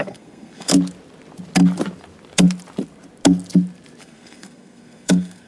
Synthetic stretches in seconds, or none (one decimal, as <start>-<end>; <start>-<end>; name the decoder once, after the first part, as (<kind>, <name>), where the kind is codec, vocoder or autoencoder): 0.0-0.7 (codec, SNAC); 4.0-5.5